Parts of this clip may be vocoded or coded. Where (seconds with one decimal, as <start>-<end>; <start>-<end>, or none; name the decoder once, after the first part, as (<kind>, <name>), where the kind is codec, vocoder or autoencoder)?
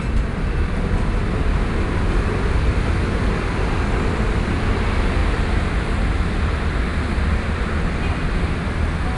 none